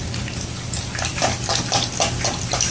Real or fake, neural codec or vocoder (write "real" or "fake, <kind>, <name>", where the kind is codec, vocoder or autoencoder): real